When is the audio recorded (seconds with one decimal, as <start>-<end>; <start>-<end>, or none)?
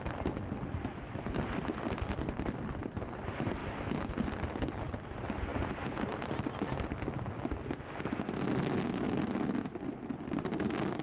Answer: 0.0-11.0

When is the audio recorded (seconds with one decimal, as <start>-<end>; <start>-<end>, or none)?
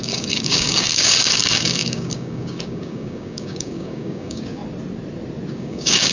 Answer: 4.6-5.5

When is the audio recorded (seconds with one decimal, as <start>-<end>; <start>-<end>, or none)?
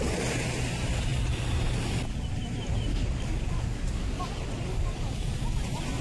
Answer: 0.0-2.9; 4.2-4.7; 5.2-6.0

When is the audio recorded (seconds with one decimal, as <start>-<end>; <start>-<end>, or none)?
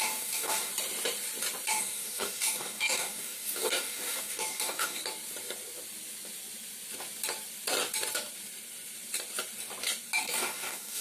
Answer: 0.7-1.7; 5.0-10.2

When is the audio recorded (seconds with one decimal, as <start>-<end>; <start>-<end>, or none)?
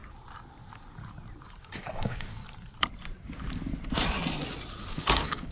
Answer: 0.0-1.4; 2.4-4.9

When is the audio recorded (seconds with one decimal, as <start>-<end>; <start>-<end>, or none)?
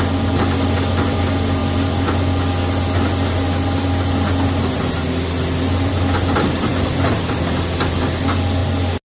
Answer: 0.0-9.2